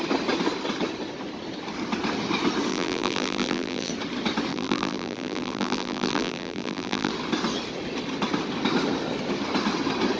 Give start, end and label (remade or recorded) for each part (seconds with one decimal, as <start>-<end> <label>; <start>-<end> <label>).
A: 0.0-2.7 recorded; 2.7-3.9 remade; 3.9-4.5 recorded; 4.5-7.1 remade; 7.1-10.2 recorded